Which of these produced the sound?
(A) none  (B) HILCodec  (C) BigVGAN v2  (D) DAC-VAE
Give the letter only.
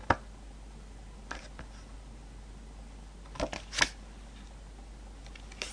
A